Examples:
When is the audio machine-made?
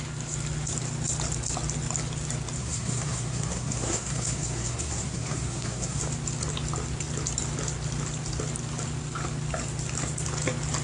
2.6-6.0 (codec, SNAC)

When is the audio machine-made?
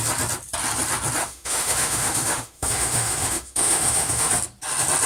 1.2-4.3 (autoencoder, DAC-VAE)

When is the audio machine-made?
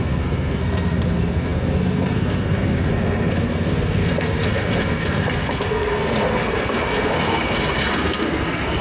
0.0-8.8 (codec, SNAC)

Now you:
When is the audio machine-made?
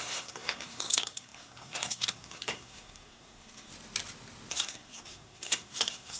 0.0-3.7 (codec, SNAC); 4.5-6.2